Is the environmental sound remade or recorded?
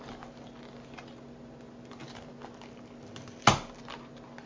recorded